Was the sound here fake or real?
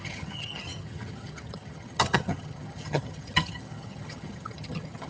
fake